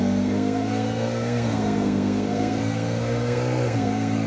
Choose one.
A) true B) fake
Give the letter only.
B